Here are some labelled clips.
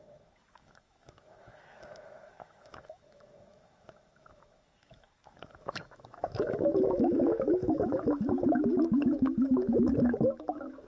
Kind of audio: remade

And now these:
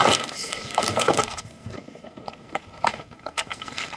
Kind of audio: remade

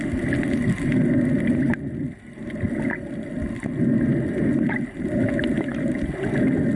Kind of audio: recorded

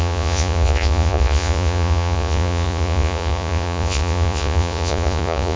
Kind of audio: remade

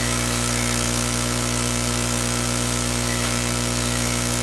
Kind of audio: remade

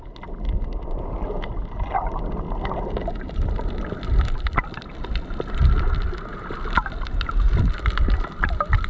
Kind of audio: recorded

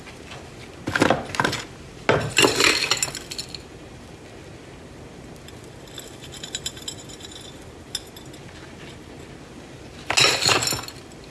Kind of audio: recorded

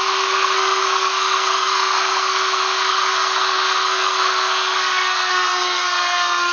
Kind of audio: remade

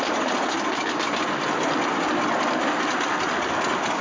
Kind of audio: recorded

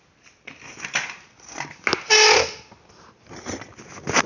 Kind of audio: recorded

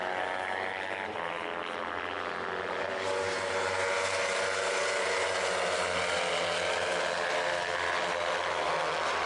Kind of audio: recorded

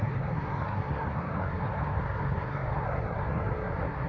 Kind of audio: remade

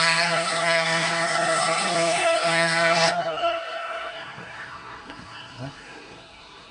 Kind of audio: remade